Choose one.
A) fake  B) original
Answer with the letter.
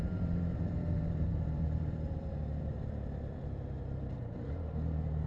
A